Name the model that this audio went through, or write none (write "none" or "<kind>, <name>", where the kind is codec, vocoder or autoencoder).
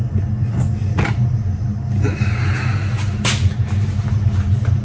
none